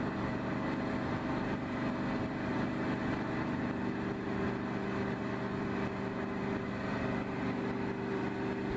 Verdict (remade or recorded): recorded